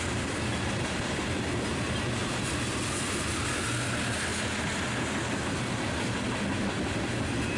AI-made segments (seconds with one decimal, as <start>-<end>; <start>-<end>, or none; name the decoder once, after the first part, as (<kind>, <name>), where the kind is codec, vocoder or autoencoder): none